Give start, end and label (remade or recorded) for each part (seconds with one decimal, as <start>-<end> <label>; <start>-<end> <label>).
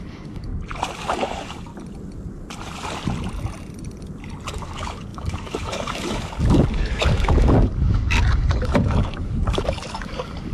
0.0-0.5 remade; 0.5-1.0 recorded; 1.0-1.7 remade; 1.7-4.5 recorded; 4.5-10.5 remade